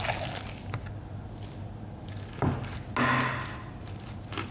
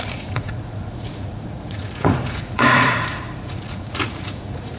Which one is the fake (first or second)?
second